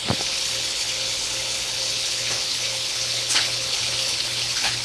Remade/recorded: remade